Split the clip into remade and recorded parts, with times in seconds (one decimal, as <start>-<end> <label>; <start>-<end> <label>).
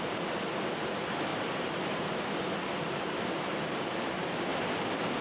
0.0-1.3 recorded; 1.3-4.4 remade; 4.4-5.2 recorded